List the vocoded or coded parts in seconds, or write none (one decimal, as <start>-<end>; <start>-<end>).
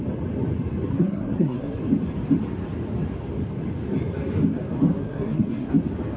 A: 0.9-1.8; 4.9-5.7